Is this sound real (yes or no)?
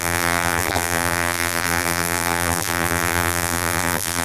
no